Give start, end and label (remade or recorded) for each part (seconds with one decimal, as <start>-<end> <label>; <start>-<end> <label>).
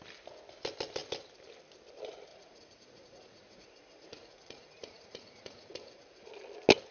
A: 0.0-2.3 recorded; 2.3-6.3 remade; 6.3-6.9 recorded